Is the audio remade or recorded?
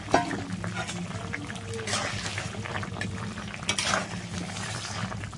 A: recorded